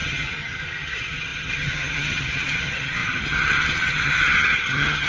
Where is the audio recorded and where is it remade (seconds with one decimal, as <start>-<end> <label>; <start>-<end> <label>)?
0.0-5.1 remade